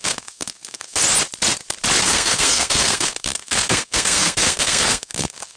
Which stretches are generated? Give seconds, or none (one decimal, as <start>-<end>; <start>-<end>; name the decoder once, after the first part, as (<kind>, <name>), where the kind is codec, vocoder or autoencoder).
0.0-1.0 (codec, SNAC); 2.0-5.6